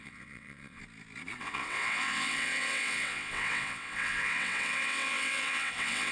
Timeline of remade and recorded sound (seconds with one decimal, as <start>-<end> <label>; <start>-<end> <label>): 0.0-0.8 remade; 0.8-1.4 recorded; 1.4-6.1 remade